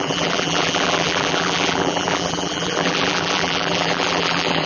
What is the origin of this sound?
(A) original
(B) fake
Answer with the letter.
B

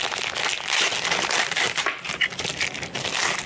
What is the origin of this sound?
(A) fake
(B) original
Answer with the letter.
B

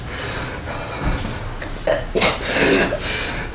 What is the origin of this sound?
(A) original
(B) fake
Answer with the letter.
A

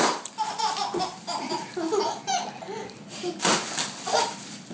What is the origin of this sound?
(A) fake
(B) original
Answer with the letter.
B